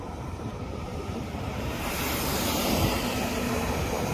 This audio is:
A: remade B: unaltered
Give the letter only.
A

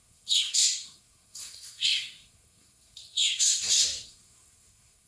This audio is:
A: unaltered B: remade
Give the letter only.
B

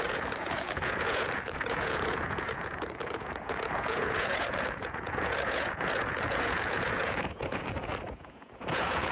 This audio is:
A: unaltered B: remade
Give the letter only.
B